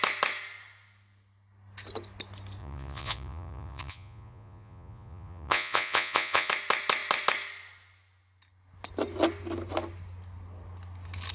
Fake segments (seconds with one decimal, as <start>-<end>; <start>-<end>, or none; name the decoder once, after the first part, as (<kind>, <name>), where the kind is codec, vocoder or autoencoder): 2.6-6.5 (vocoder, Vocos)